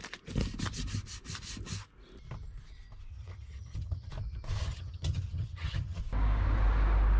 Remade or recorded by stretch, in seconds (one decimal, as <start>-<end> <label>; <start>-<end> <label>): 0.0-3.1 recorded; 3.1-4.1 remade; 4.1-4.6 recorded; 4.6-6.0 remade; 6.0-7.2 recorded